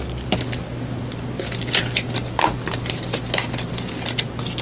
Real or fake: real